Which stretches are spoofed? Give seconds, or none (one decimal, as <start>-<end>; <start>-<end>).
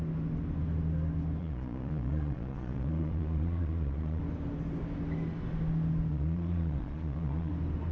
1.4-4.2; 6.1-7.5